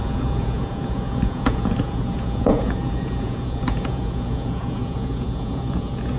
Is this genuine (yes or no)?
no